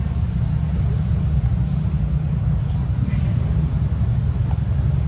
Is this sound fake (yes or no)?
no